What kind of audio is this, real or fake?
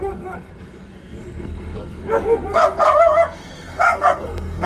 fake